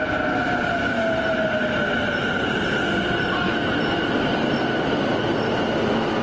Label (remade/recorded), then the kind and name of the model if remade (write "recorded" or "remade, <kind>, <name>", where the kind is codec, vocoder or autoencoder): recorded